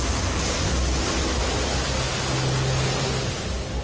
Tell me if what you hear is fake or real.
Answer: real